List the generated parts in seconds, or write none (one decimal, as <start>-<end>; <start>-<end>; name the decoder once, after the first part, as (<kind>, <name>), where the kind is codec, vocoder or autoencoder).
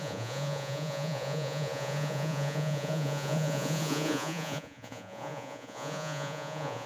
0.0-6.9 (vocoder, Vocos)